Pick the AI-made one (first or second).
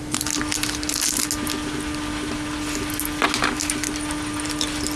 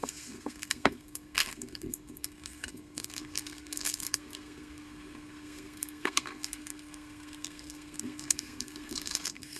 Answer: second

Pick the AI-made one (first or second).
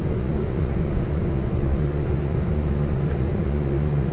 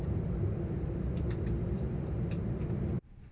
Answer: first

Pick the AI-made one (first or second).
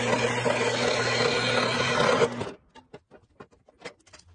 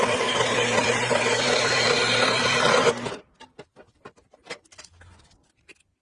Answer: second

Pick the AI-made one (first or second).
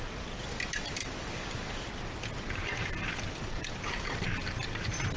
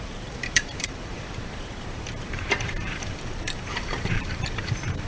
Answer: second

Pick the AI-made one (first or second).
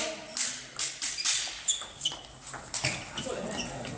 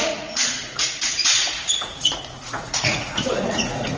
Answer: second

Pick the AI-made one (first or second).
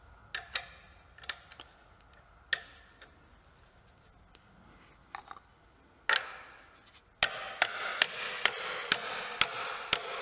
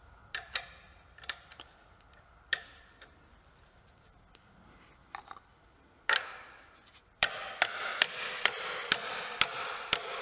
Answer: second